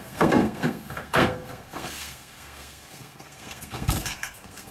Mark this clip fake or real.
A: fake